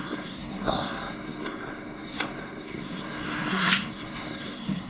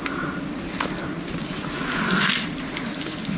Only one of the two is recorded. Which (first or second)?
second